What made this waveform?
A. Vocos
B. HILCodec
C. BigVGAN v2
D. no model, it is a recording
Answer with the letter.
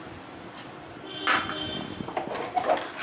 D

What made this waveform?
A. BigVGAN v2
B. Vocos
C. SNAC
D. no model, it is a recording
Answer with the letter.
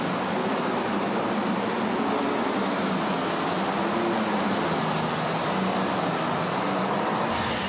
D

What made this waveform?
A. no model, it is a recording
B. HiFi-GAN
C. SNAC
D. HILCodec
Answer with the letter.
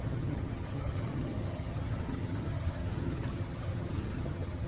B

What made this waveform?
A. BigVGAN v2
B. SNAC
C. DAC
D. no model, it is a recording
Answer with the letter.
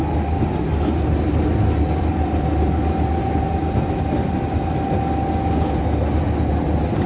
D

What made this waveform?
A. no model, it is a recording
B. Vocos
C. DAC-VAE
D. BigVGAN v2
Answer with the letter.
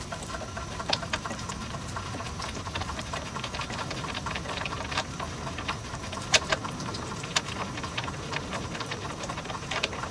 D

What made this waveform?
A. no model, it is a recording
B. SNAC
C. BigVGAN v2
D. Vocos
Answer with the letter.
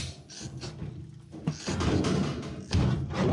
A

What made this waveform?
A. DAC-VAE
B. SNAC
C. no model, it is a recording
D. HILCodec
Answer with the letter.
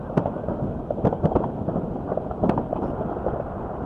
C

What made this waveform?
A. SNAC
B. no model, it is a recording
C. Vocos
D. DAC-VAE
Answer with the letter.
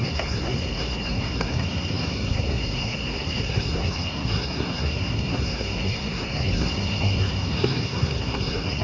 A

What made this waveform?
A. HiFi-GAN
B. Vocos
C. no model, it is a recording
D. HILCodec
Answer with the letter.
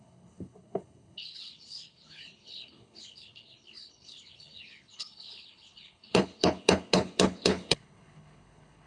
D